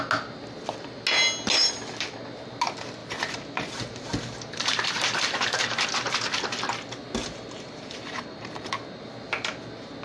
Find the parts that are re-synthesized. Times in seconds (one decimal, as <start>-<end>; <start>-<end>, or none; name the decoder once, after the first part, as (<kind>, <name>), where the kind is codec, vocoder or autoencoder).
3.0-5.9 (vocoder, BigVGAN v2); 7.2-8.7